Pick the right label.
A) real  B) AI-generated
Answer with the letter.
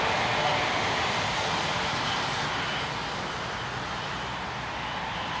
A